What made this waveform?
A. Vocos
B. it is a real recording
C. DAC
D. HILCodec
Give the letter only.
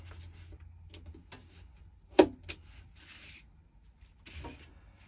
B